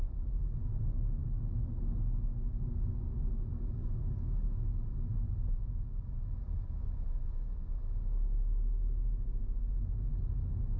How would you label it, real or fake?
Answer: real